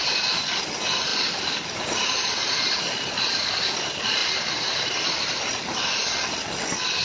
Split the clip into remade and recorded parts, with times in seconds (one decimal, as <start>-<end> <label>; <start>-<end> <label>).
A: 0.0-7.0 recorded